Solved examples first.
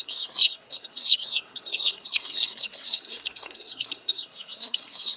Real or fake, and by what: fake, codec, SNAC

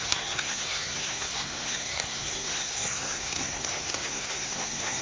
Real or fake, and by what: fake, codec, SNAC